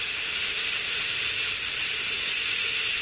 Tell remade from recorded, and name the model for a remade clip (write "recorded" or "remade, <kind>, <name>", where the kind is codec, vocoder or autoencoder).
recorded